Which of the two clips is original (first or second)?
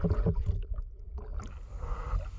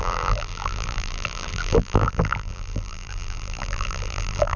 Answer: first